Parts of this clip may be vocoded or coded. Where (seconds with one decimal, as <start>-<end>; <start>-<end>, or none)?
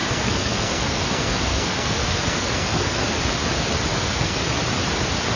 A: 0.0-3.2; 3.9-4.4